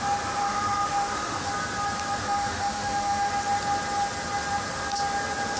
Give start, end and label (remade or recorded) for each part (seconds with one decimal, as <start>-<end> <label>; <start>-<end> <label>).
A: 0.0-0.4 recorded; 0.4-1.5 remade; 1.5-2.2 recorded; 2.2-3.3 remade; 3.3-5.6 recorded